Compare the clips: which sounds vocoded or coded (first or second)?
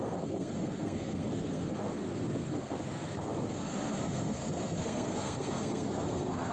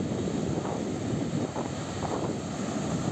first